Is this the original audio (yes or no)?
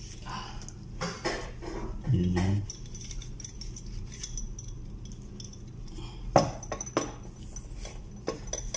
yes